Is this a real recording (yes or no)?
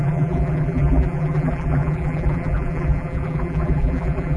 no